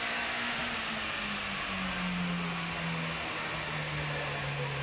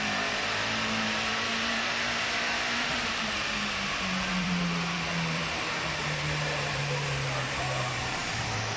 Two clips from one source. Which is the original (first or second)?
first